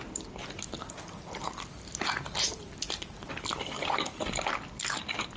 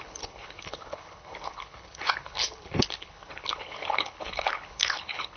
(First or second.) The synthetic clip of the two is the second